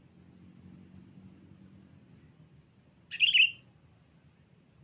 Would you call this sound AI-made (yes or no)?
no